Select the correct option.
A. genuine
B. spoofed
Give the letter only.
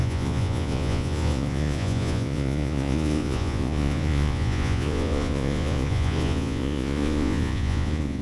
B